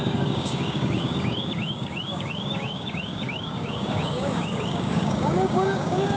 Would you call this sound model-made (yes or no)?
yes